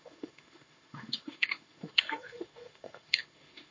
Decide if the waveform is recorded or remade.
remade